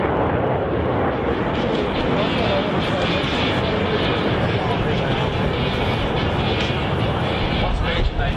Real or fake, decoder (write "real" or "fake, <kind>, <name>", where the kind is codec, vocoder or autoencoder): real